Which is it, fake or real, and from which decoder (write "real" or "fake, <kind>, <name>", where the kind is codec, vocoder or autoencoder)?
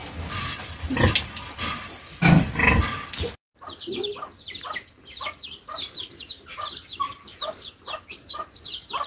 fake, vocoder, BigVGAN v2